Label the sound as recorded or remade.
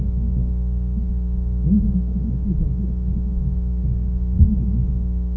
recorded